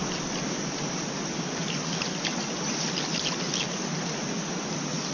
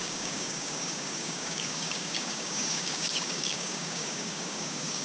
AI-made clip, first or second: second